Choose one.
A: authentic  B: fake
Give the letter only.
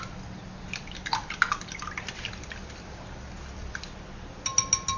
A